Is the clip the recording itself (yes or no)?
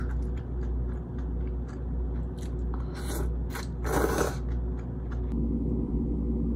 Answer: yes